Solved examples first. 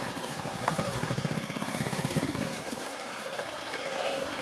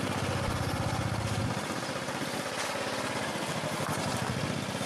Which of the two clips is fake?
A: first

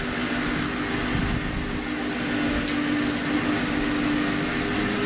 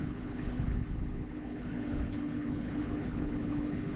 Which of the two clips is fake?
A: second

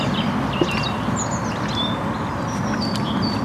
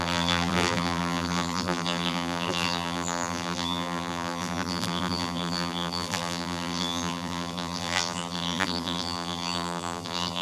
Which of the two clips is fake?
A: second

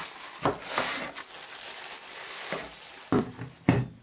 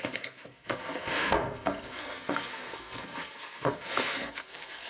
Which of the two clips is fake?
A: second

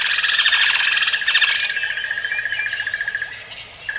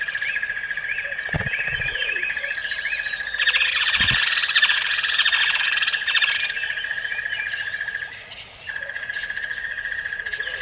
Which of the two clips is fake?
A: second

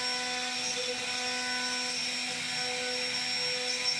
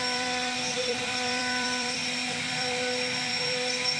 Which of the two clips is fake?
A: second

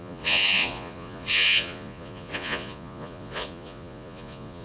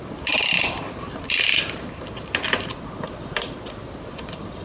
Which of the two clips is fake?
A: first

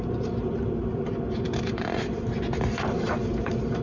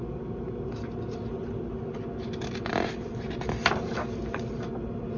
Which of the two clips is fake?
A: first